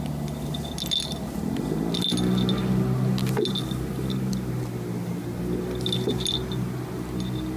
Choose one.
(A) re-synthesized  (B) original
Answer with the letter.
B